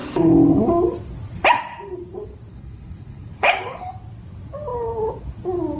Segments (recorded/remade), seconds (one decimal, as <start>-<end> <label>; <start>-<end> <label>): 0.0-2.5 recorded; 2.5-3.9 remade; 3.9-5.8 recorded